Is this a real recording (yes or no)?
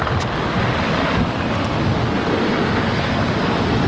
yes